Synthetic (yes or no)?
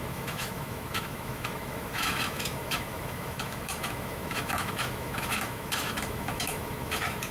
yes